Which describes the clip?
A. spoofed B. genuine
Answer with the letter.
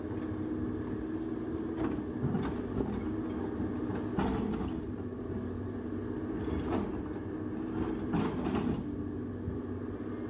B